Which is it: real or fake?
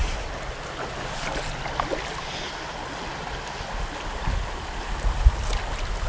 real